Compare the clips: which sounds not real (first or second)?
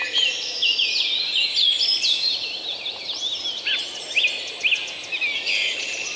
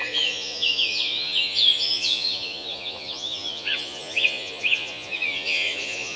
second